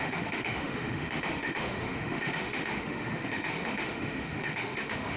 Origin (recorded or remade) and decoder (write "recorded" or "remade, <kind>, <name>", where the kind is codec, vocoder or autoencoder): remade, autoencoder, DAC-VAE